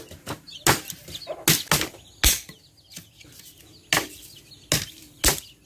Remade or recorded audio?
recorded